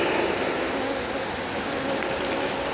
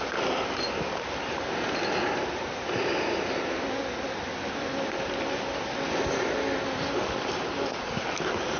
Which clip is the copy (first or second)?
second